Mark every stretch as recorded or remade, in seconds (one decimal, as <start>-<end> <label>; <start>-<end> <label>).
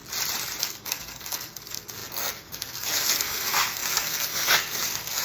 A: 0.0-0.6 recorded; 0.6-5.2 remade